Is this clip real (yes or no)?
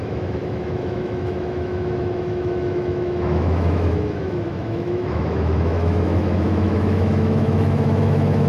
no